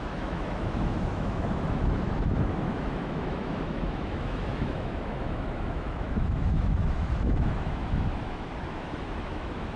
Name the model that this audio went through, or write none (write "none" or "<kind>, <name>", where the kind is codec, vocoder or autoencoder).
autoencoder, DAC-VAE